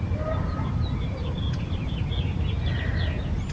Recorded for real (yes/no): yes